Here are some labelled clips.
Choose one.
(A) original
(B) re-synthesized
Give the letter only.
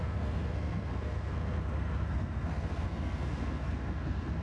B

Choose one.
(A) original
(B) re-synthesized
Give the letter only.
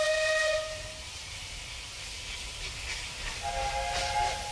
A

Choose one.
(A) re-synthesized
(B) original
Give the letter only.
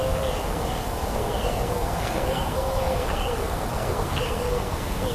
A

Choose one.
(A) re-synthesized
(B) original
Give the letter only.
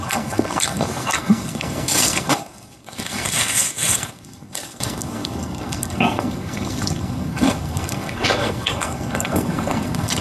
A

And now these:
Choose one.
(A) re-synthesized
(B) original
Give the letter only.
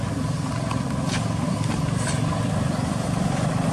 B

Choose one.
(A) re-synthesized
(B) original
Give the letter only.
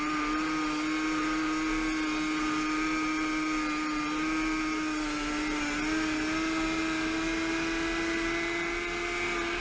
B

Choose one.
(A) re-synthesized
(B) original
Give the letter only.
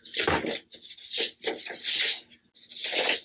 B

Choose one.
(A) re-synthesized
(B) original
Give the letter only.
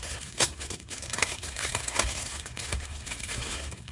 A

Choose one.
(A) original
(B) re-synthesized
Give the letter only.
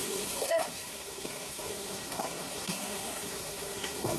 B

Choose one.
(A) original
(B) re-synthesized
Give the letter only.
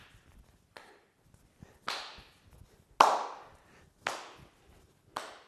A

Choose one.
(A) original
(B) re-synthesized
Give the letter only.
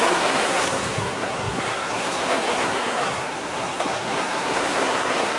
B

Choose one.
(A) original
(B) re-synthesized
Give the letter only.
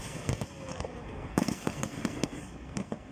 B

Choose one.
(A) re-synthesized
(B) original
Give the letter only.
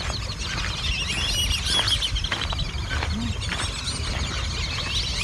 B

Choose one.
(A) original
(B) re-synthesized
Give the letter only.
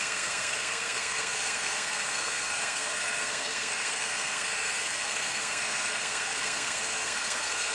B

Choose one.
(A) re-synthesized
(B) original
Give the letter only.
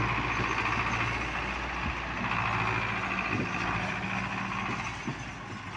B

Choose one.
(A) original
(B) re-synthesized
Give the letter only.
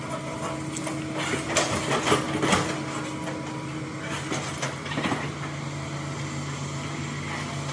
A